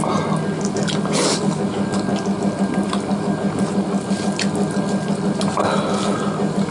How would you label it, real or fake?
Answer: real